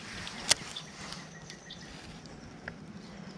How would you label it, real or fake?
real